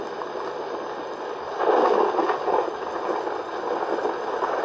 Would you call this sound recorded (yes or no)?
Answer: yes